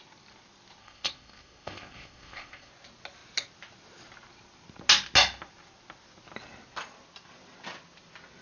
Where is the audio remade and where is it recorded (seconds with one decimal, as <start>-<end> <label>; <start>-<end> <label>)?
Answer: 0.0-0.8 recorded; 0.8-2.7 remade; 2.7-8.4 recorded